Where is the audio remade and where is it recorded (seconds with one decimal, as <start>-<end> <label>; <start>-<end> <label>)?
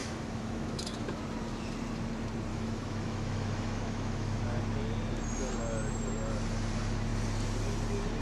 0.0-1.2 remade; 1.2-2.5 recorded; 2.5-4.4 remade; 4.4-8.2 recorded